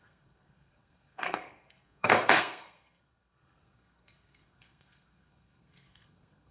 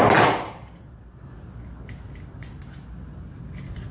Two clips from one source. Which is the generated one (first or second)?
first